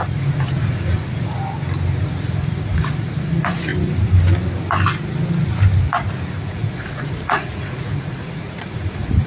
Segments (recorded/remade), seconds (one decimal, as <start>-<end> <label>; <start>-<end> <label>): 0.0-1.4 remade; 1.4-2.0 recorded; 2.0-3.7 remade; 3.7-6.5 recorded; 6.5-9.3 remade